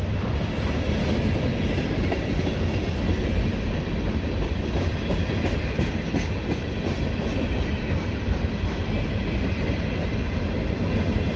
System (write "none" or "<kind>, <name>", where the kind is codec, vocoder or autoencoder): none